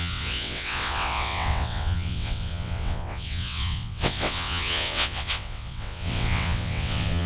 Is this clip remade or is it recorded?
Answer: remade